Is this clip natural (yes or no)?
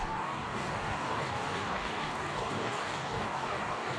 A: no